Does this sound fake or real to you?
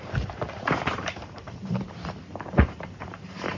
fake